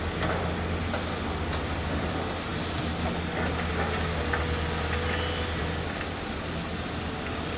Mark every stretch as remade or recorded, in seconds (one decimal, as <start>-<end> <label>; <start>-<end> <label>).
0.0-7.6 recorded